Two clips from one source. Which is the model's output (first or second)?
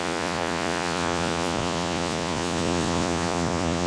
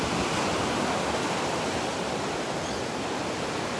first